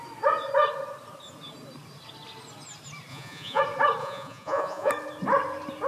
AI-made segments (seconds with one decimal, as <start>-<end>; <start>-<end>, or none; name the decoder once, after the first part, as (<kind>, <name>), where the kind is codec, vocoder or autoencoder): 3.1-3.6 (vocoder, Vocos); 4.0-4.9